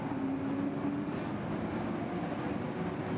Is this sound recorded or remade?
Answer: recorded